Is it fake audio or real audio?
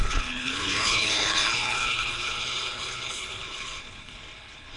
fake